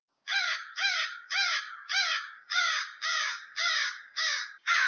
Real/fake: fake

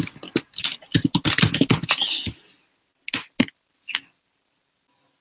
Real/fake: real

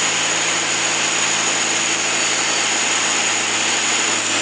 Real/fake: real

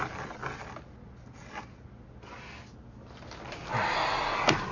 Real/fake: real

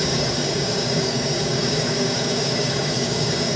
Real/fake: fake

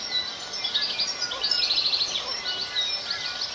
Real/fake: real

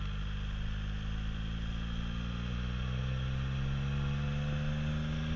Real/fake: real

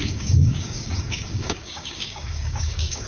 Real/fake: fake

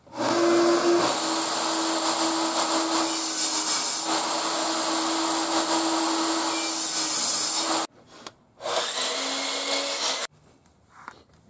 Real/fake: real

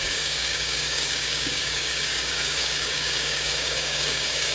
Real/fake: fake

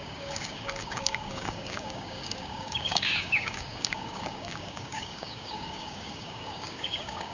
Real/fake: fake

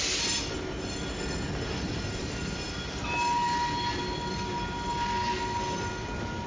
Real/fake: real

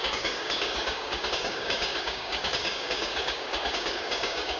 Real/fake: fake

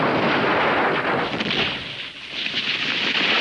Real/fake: real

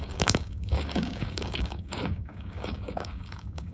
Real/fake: fake